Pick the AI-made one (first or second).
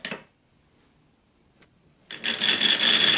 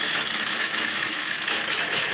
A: second